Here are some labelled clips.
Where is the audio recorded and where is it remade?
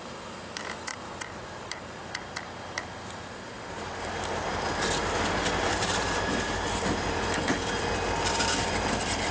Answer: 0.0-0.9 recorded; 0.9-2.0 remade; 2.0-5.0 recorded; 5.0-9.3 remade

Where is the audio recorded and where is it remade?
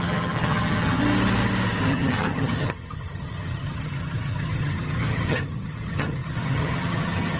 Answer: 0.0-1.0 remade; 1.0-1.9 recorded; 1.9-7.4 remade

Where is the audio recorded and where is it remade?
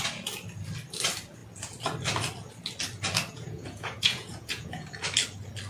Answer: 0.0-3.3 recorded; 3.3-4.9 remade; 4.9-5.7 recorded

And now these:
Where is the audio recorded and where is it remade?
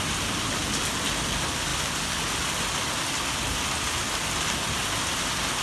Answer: 0.0-5.6 recorded